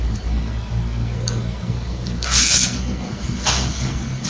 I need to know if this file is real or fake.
fake